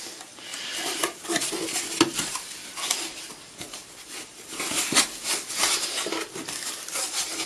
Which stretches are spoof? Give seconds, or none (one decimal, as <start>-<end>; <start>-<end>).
none